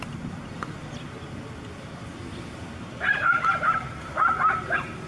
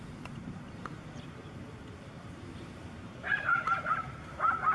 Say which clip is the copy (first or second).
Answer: second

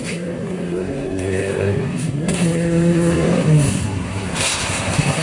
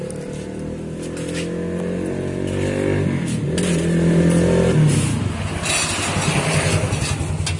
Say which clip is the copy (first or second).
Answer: first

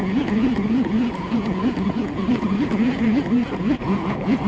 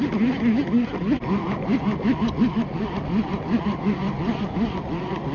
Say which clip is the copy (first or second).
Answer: first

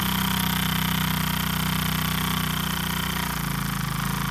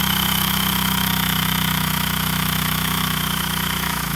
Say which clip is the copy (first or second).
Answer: second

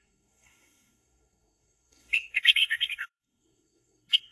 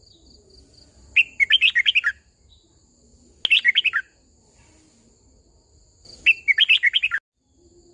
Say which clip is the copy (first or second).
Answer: first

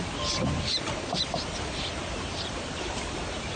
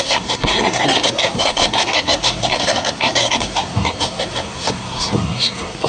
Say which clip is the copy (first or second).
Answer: second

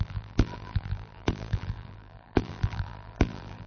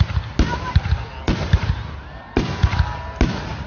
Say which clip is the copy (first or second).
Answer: first